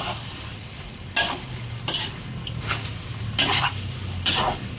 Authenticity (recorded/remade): recorded